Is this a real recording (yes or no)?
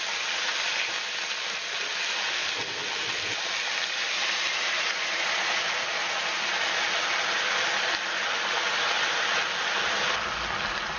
yes